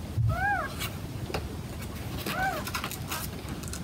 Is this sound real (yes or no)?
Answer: yes